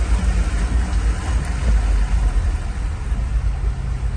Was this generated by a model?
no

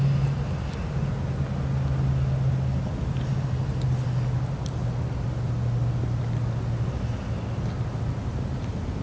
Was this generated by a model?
no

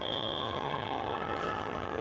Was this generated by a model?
yes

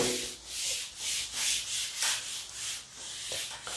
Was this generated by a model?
no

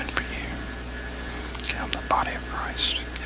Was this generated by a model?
no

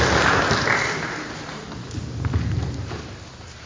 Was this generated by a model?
no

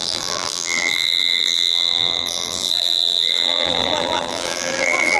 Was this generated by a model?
yes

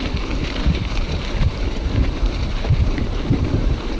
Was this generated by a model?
yes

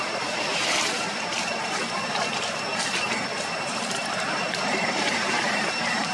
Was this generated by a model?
yes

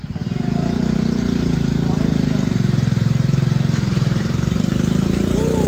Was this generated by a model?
yes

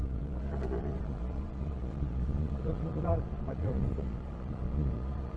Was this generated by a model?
yes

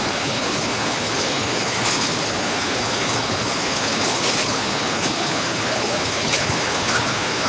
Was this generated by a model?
yes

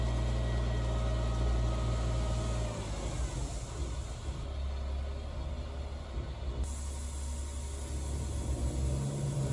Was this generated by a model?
no